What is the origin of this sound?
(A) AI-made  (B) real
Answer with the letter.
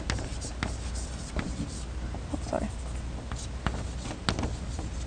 B